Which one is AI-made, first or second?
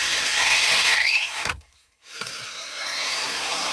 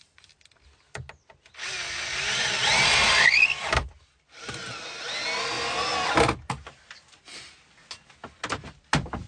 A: first